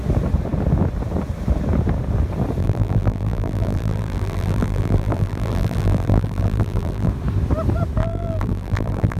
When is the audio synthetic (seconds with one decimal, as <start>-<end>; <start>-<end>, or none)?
2.6-7.1; 8.0-9.2